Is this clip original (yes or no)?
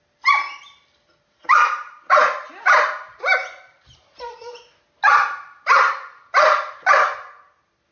yes